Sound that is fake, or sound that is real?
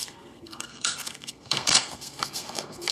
fake